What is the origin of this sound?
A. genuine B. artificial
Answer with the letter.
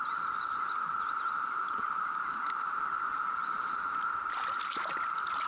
A